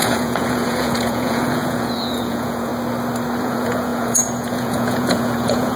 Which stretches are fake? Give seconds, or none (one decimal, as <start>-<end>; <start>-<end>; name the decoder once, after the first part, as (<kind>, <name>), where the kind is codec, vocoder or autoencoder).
0.0-2.7 (vocoder, Vocos); 3.4-5.8